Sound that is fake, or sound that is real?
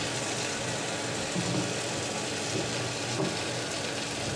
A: real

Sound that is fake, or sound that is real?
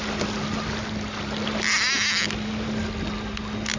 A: real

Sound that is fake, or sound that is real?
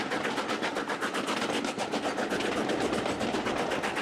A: real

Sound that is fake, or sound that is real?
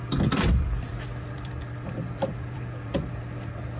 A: fake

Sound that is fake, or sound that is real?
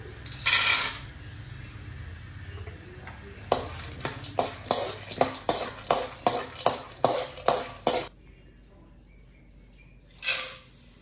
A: real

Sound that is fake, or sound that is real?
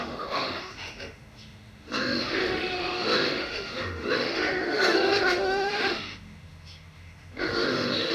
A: fake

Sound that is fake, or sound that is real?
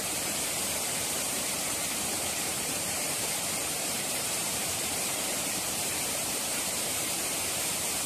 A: fake